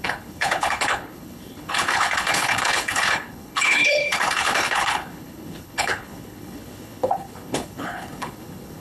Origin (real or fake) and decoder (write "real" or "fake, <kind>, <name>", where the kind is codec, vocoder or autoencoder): fake, codec, HILCodec